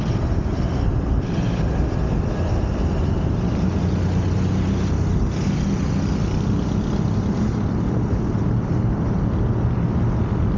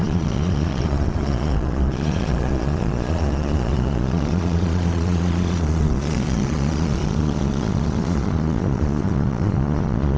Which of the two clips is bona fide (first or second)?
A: first